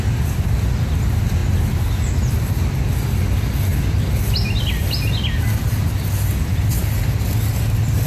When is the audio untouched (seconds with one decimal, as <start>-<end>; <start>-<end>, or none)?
0.0-8.1